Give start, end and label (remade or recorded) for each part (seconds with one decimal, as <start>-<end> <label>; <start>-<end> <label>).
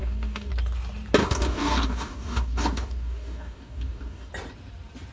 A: 0.0-0.5 remade; 0.5-1.2 recorded; 1.2-4.3 remade; 4.3-5.1 recorded